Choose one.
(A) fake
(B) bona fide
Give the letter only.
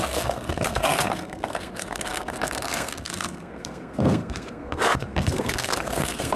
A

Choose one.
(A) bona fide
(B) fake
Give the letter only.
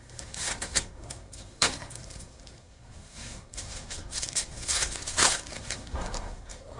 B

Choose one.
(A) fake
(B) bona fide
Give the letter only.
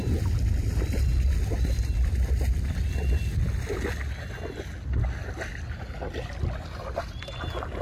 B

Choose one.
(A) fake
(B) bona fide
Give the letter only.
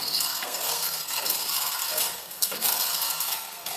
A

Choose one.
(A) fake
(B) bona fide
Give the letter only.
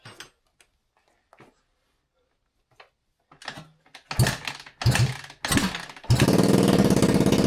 B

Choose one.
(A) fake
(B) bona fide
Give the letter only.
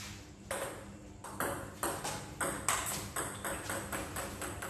B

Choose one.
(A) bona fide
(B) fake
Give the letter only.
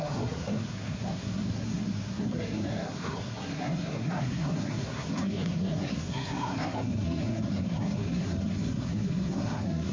B